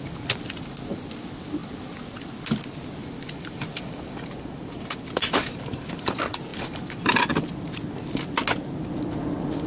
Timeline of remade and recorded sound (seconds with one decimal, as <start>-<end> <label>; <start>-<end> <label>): 0.0-3.0 recorded; 3.0-5.9 remade; 5.9-6.5 recorded; 6.5-7.2 remade; 7.2-9.7 recorded

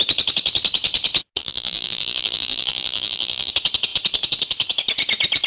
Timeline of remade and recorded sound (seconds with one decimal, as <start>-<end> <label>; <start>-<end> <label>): 0.0-1.4 recorded; 1.4-3.5 remade; 3.5-5.5 recorded

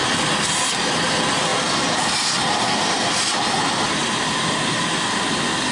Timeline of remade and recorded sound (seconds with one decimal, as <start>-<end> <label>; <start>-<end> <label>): 0.0-5.7 recorded

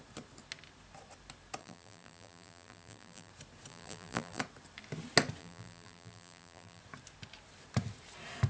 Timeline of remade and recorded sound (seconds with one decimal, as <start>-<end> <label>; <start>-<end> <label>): 0.0-1.6 recorded; 1.6-3.3 remade; 3.3-3.7 recorded; 3.7-4.4 remade; 4.4-5.4 recorded; 5.4-6.8 remade; 6.8-8.5 recorded